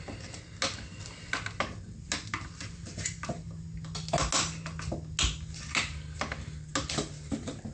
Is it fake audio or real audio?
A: real